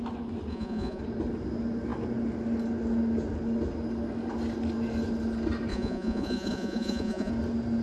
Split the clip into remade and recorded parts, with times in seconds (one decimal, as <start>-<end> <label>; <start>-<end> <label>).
0.0-0.5 recorded; 0.5-1.0 remade; 1.0-5.7 recorded; 5.7-7.3 remade; 7.3-7.8 recorded